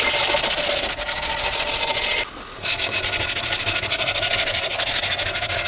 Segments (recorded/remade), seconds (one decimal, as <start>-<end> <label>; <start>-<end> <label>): 0.0-5.7 recorded